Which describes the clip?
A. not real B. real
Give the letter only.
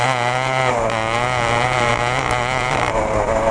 A